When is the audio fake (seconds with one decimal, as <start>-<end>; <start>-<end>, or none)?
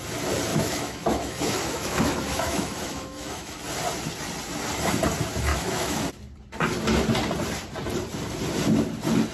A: 0.5-3.6; 5.5-6.0